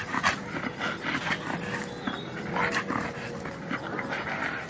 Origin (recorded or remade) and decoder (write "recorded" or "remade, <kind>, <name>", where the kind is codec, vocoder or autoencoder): recorded